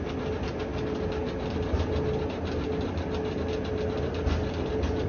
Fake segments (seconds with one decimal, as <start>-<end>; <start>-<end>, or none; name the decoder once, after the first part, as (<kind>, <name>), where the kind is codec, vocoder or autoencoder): 4.4-5.1 (vocoder, BigVGAN v2)